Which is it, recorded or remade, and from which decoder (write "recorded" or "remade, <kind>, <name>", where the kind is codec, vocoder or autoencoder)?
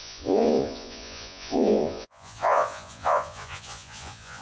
remade, vocoder, Vocos